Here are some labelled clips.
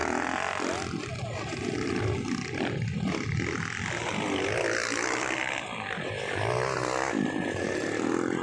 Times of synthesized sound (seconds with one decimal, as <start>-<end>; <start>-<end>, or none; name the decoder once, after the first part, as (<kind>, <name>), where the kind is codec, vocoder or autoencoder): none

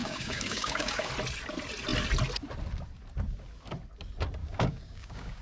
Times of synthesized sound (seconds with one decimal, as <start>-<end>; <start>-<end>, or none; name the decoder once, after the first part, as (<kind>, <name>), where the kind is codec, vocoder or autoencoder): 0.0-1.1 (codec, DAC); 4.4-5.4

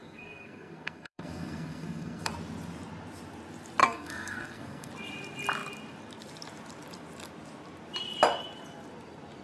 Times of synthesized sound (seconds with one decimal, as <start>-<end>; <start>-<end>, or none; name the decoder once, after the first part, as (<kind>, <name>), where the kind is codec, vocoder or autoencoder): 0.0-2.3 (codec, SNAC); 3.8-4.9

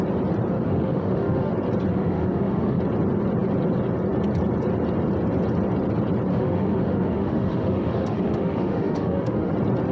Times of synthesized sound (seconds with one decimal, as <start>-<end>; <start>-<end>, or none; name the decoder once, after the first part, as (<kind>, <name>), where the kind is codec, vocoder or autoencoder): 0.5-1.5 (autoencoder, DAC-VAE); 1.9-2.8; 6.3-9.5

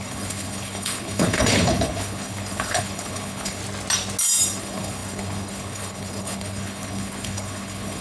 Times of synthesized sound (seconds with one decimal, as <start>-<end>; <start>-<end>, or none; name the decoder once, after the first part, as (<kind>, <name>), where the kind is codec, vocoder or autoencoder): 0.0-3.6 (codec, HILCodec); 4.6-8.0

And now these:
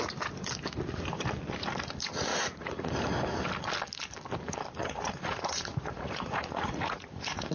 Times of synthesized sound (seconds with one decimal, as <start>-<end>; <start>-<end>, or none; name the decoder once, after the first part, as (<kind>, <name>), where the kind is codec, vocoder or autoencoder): 2.3-2.9 (vocoder, Vocos); 4.8-7.5

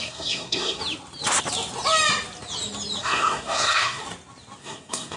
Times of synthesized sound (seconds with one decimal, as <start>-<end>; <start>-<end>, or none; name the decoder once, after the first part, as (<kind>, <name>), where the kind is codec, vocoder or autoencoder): 0.0-0.8 (codec, SNAC); 3.0-4.0; 4.6-5.2

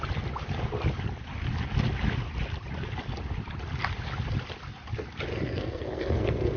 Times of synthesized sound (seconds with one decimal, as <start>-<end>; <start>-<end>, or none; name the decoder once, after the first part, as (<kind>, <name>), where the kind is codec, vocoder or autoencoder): 5.3-6.6 (codec, SNAC)